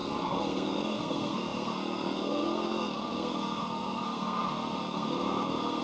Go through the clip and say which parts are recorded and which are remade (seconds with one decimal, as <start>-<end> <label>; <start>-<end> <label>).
0.0-5.8 remade